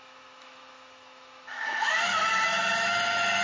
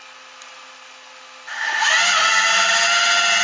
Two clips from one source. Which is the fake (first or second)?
first